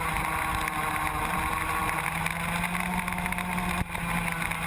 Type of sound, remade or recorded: recorded